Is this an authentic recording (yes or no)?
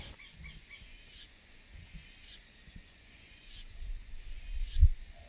no